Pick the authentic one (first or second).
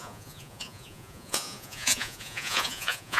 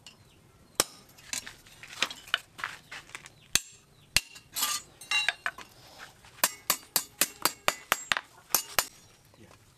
second